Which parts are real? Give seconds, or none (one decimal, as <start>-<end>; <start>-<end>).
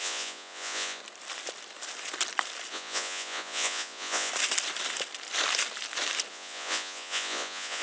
1.0-2.7; 4.3-6.3